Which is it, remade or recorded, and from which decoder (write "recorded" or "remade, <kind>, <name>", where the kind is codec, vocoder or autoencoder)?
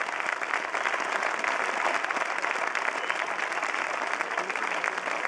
recorded